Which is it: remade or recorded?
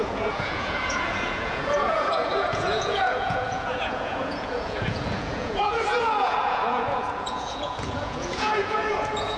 remade